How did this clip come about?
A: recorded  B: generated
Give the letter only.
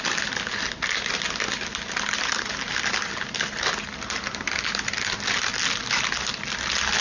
A